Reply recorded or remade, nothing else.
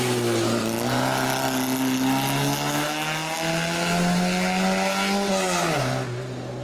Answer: recorded